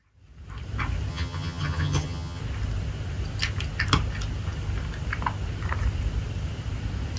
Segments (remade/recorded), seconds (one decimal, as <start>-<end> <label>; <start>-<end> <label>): 0.0-1.1 recorded; 1.1-2.4 remade; 2.4-7.2 recorded

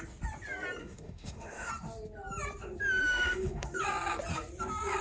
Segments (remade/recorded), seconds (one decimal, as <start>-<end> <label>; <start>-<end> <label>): 0.0-0.8 recorded; 0.8-1.7 remade; 1.7-3.0 recorded; 3.0-3.8 remade; 3.8-5.0 recorded